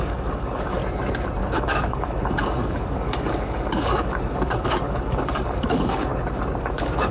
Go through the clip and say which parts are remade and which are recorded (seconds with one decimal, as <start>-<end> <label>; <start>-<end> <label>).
0.0-0.8 remade; 0.8-1.4 recorded; 1.4-6.1 remade; 6.1-6.6 recorded; 6.6-7.1 remade